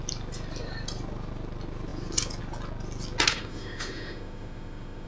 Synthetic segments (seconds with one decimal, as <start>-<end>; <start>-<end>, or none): 3.3-5.1